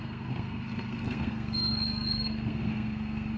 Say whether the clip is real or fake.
fake